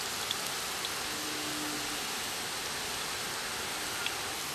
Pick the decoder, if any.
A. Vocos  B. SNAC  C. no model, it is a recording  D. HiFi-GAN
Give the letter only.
C